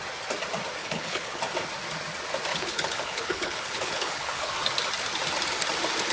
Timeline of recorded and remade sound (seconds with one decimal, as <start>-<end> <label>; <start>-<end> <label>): 0.0-0.8 recorded; 0.8-1.4 remade; 1.4-2.5 recorded; 2.5-4.5 remade; 4.5-6.1 recorded